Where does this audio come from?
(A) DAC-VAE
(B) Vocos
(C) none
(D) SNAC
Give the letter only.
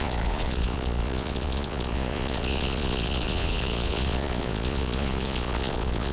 B